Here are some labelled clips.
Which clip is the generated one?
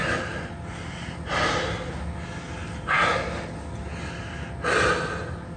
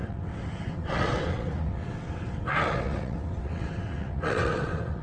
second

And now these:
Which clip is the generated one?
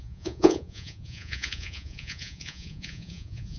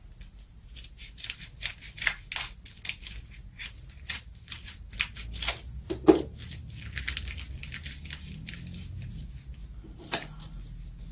first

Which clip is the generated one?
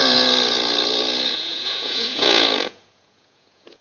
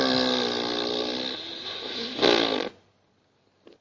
first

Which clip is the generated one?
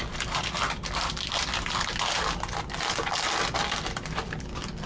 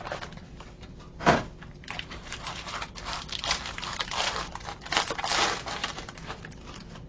second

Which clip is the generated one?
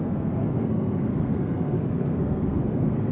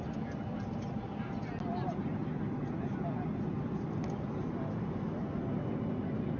first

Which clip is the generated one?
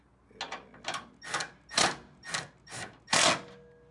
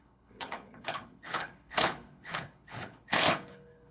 second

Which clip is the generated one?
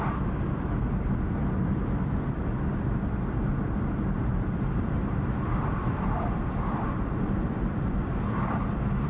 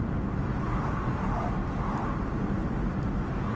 first